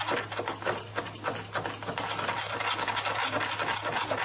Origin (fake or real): real